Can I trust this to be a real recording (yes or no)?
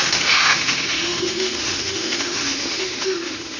no